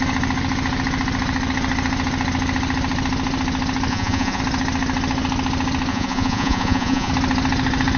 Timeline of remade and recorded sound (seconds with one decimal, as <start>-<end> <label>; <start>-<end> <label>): 0.0-3.9 recorded; 3.9-4.4 remade; 4.4-5.9 recorded; 5.9-7.1 remade; 7.1-8.0 recorded

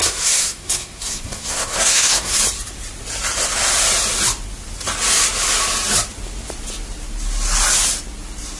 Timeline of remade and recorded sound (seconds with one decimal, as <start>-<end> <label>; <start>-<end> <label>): 0.0-2.4 remade; 2.4-8.6 recorded

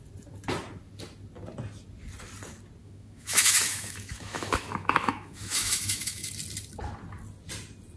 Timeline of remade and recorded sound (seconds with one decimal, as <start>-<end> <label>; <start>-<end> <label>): 0.0-2.8 recorded; 2.8-6.3 remade; 6.3-8.0 recorded